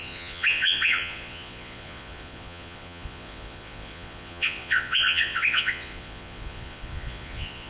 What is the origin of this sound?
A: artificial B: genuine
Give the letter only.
A